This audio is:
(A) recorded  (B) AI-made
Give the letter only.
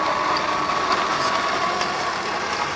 A